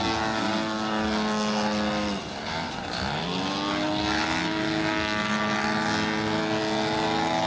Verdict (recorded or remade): recorded